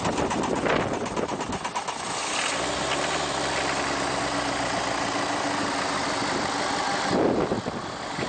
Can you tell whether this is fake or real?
real